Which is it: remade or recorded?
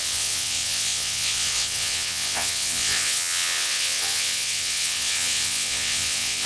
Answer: remade